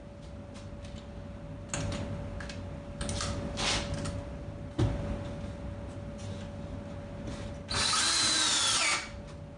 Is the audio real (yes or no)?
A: yes